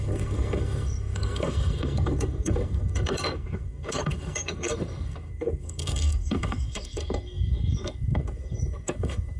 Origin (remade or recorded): remade